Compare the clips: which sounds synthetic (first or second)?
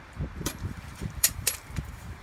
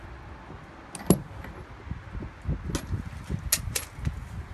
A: first